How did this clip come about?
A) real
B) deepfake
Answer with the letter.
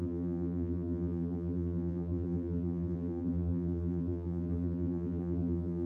B